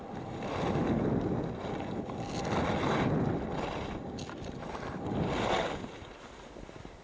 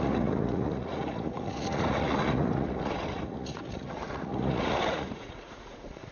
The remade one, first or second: second